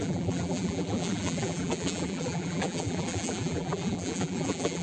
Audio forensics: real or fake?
fake